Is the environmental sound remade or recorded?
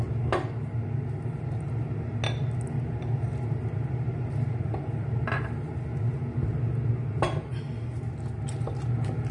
recorded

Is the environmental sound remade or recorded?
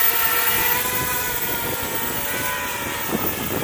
recorded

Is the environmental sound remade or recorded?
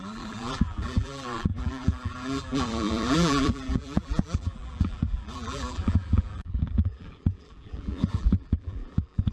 remade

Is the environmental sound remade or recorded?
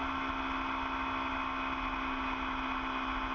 recorded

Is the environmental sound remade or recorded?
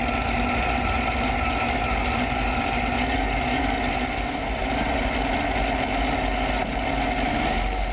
recorded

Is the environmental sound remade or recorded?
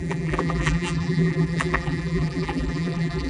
remade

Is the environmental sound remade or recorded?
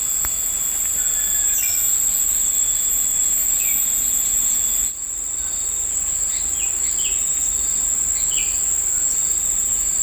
recorded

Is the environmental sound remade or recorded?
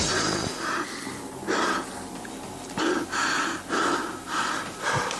recorded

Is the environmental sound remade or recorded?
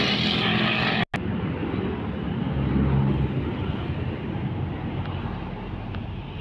recorded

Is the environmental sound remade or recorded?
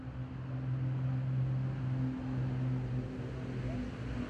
recorded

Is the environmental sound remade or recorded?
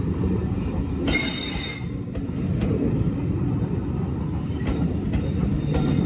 recorded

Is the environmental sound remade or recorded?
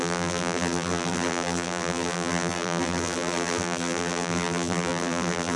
remade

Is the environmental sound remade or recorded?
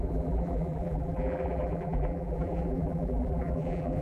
remade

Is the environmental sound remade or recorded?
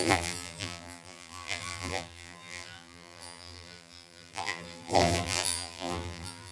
remade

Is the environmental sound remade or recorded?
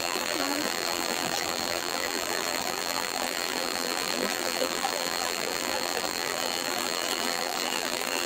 remade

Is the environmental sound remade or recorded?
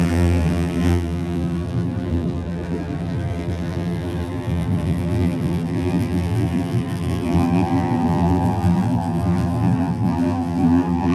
remade